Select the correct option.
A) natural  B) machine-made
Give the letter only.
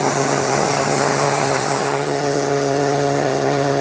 B